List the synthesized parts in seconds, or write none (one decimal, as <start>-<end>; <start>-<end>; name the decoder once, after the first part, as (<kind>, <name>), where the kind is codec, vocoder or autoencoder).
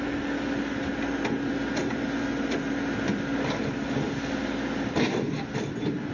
none